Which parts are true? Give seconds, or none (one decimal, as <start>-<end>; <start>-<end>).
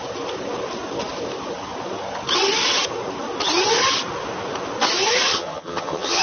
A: 0.0-5.3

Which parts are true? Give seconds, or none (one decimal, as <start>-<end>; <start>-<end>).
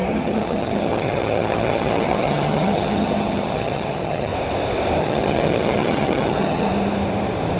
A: 4.3-5.0; 6.7-7.6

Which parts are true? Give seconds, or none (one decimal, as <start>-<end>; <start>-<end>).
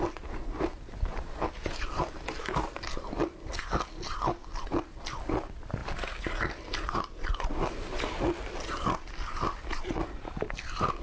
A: 0.0-11.0